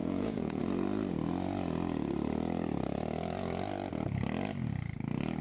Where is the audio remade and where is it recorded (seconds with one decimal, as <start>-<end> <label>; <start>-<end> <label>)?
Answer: 0.0-0.6 remade; 0.6-5.4 recorded